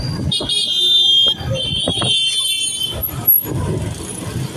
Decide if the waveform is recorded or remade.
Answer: recorded